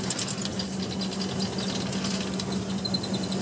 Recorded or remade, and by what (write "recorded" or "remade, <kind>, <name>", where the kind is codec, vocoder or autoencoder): recorded